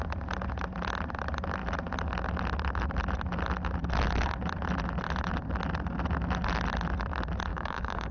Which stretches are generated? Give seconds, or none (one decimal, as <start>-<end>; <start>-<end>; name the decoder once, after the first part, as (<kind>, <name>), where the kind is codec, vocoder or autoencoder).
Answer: 7.5-8.1 (codec, DAC)

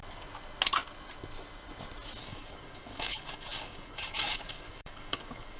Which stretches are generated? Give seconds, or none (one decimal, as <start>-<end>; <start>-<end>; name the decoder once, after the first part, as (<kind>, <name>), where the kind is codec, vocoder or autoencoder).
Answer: 2.2-5.6 (codec, DAC)